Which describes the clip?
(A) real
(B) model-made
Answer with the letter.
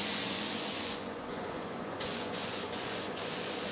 B